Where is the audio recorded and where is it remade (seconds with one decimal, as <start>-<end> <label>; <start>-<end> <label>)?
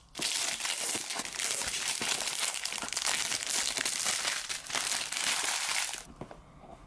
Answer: 0.0-6.9 recorded